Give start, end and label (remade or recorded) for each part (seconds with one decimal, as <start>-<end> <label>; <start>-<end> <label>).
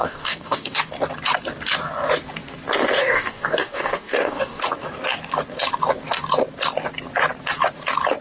0.0-0.9 remade; 0.9-3.0 recorded; 3.0-4.6 remade; 4.6-8.2 recorded